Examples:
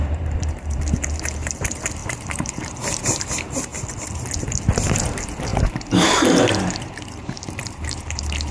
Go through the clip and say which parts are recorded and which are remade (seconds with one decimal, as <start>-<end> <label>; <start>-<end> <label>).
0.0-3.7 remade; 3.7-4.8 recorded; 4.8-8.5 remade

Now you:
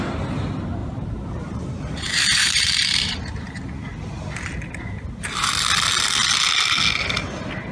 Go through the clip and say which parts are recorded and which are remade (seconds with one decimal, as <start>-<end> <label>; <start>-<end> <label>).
0.0-0.8 recorded; 0.8-3.7 remade; 3.7-7.7 recorded

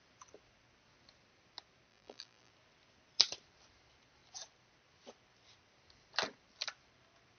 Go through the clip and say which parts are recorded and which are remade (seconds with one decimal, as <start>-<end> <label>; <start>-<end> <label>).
0.0-1.9 recorded; 1.9-2.5 remade; 2.5-7.4 recorded

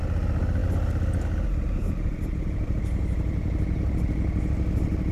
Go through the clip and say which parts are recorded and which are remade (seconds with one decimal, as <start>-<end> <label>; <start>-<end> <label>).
0.0-1.8 recorded; 1.8-4.1 remade; 4.1-5.1 recorded